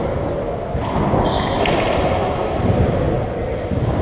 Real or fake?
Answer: real